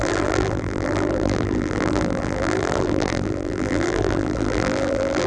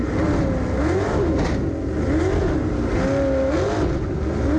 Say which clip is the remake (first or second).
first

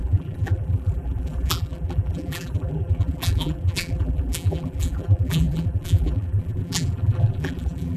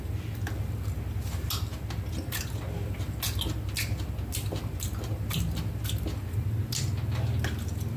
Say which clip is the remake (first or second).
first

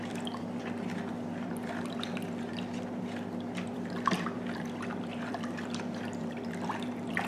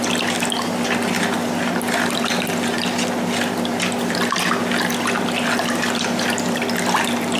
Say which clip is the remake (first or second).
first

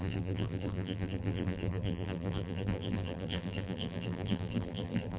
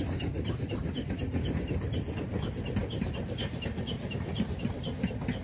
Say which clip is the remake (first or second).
first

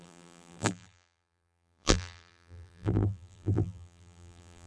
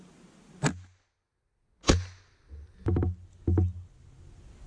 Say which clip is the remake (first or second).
first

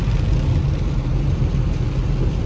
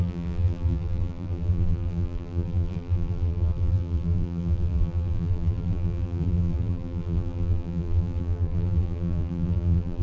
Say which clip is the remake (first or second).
second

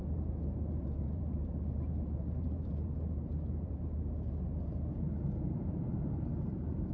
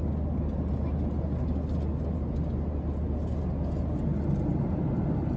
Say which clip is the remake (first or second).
first